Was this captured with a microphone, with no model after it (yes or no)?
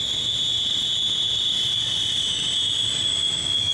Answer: yes